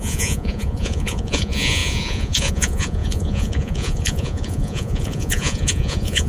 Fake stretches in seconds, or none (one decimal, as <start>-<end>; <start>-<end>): 0.0-6.3